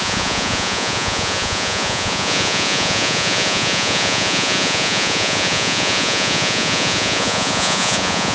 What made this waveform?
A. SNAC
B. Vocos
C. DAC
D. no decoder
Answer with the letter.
B